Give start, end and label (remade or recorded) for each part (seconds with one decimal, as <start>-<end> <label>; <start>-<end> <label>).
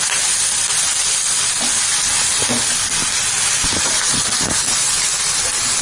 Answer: 0.0-5.8 recorded